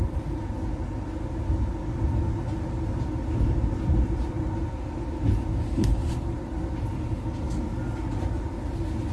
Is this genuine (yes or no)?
yes